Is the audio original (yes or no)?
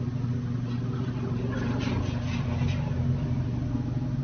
yes